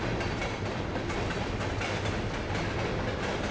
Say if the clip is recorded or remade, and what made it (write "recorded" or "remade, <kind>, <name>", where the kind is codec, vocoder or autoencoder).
recorded